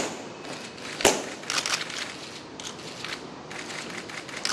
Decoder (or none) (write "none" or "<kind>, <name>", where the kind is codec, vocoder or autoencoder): none